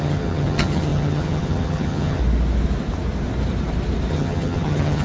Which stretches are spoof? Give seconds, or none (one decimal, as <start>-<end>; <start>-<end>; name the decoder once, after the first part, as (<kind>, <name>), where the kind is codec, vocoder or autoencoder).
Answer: 0.0-2.2 (vocoder, HiFi-GAN); 4.1-5.0